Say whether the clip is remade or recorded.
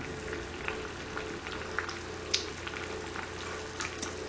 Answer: recorded